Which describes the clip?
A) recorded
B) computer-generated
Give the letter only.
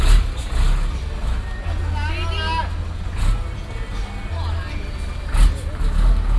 A